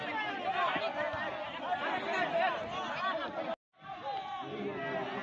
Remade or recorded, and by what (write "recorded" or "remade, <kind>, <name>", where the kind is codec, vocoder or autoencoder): recorded